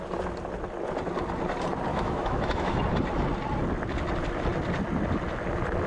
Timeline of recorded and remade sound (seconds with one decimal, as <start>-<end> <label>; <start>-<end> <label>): 0.0-1.9 recorded; 1.9-2.8 remade; 2.8-5.9 recorded